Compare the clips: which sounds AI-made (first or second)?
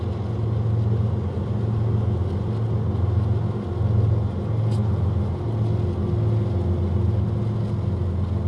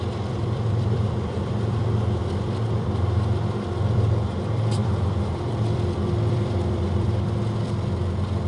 second